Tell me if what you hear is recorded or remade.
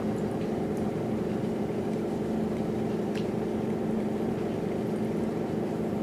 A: remade